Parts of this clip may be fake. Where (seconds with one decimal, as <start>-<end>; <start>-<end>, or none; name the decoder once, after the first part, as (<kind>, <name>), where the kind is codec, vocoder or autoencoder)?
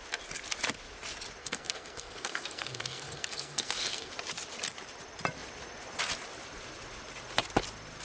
1.4-4.1 (codec, SNAC)